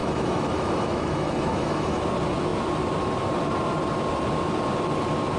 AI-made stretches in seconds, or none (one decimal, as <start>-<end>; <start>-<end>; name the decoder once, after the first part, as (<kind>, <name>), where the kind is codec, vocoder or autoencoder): 0.0-2.0 (autoencoder, DAC-VAE)